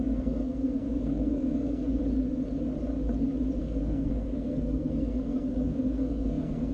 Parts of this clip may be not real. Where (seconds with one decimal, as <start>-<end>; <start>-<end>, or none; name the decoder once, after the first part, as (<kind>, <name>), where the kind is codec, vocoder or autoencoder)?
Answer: 0.0-2.0 (codec, SNAC); 3.6-6.7